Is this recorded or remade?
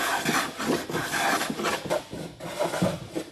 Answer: recorded